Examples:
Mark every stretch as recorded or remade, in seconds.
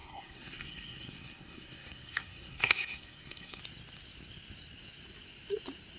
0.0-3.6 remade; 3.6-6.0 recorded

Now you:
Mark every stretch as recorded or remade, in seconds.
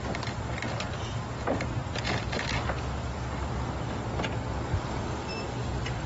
0.0-6.1 recorded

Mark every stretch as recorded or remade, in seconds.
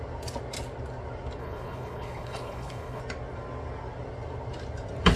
0.0-1.4 recorded; 1.4-3.0 remade; 3.0-5.2 recorded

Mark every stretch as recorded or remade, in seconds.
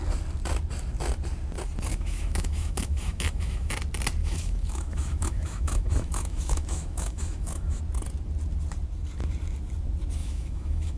0.0-1.9 recorded; 1.9-3.7 remade; 3.7-4.2 recorded; 4.2-7.8 remade; 7.8-10.2 recorded; 10.2-11.0 remade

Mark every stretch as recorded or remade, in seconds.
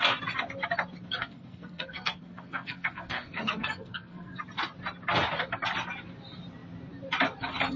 0.0-1.2 recorded; 1.2-4.4 remade; 4.4-7.8 recorded